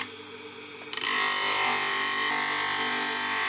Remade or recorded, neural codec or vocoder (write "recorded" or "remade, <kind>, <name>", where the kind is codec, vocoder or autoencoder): recorded